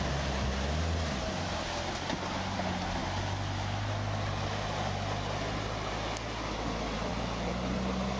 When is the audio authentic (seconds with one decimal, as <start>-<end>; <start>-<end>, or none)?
0.0-8.2